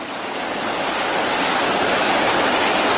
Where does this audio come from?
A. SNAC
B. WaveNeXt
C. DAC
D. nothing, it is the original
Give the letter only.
D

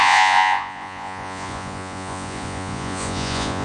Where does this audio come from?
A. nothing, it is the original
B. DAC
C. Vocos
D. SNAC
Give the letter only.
C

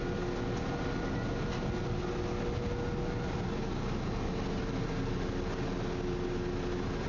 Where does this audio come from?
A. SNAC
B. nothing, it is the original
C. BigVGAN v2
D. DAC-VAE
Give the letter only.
B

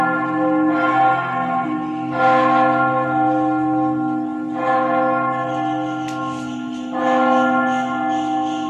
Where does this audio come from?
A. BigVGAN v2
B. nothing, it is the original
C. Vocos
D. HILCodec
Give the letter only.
B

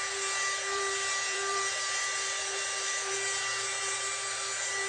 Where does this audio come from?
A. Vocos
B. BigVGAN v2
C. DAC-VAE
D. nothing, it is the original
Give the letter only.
B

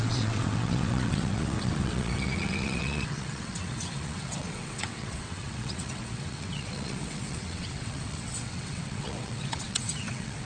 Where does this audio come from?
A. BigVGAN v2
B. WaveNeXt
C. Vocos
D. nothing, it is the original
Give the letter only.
B